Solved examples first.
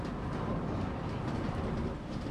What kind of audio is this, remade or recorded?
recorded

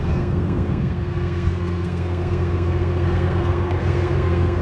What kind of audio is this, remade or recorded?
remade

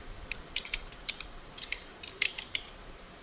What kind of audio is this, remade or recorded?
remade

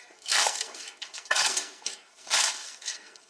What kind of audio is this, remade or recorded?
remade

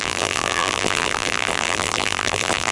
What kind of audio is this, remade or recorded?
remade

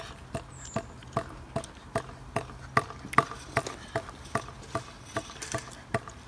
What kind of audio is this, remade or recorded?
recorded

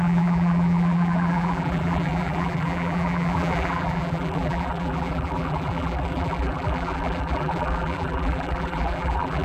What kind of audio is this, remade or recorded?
remade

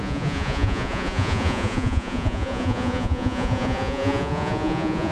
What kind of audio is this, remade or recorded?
remade